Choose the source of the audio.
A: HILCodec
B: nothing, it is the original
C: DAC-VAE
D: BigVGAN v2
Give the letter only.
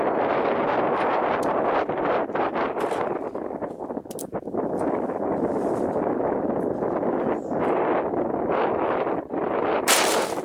B